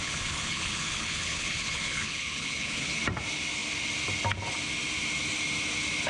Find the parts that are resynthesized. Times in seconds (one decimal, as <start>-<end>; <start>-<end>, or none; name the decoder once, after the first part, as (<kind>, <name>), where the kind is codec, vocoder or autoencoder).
0.0-3.0 (codec, HILCodec)